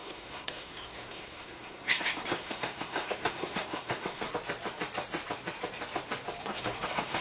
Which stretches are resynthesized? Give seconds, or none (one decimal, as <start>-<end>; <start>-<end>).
0.0-4.3; 6.4-7.2